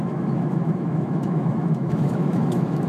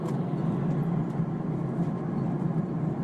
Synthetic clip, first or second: first